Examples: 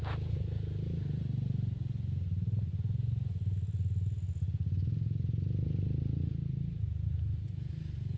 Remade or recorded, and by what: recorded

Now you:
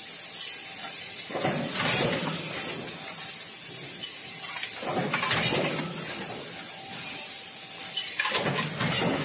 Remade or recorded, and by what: recorded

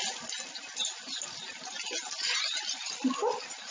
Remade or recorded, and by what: recorded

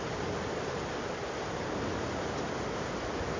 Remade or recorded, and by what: recorded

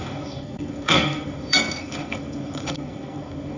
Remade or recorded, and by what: remade, codec, SNAC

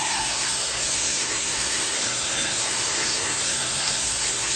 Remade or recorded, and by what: remade, codec, SNAC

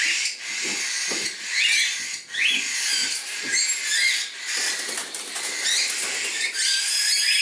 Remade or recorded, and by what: recorded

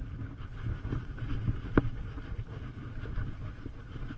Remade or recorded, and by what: recorded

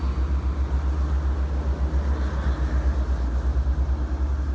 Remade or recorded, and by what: recorded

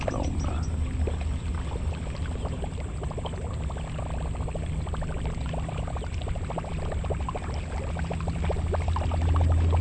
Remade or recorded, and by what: recorded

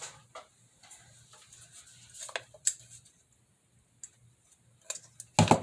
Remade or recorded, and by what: recorded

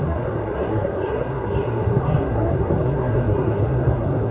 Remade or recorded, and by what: remade, codec, SNAC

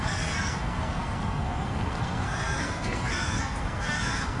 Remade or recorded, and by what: remade, codec, SNAC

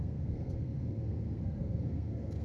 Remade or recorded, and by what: remade, codec, SNAC